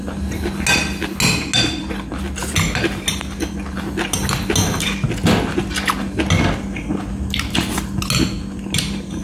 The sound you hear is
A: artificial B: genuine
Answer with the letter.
B